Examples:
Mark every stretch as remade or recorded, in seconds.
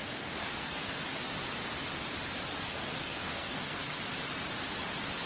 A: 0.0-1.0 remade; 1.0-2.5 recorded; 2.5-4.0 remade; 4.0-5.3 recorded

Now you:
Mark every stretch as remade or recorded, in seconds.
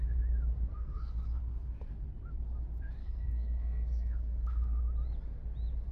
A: 0.0-0.7 recorded; 0.7-1.4 remade; 1.4-3.0 recorded; 3.0-4.8 remade; 4.8-5.9 recorded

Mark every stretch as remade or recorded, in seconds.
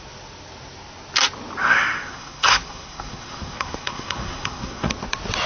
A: 0.0-1.6 recorded; 1.6-4.9 remade; 4.9-5.5 recorded